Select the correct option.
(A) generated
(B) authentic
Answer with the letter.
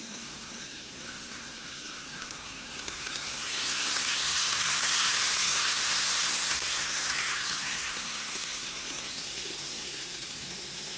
A